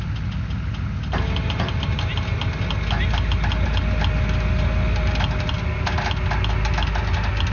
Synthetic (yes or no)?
no